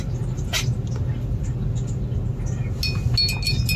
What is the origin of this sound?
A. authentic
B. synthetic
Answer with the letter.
A